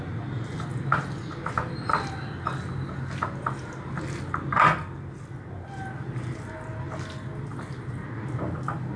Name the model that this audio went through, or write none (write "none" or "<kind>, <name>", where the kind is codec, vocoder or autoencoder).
none